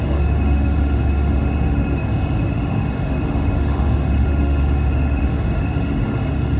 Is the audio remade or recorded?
remade